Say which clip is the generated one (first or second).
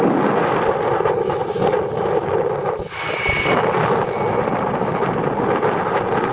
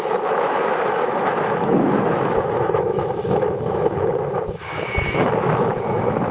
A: second